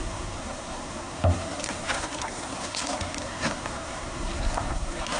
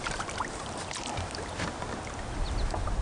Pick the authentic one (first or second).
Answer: second